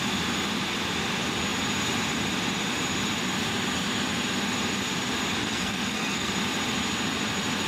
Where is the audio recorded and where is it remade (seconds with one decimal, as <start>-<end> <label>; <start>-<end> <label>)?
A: 0.0-5.4 recorded; 5.4-6.3 remade; 6.3-7.7 recorded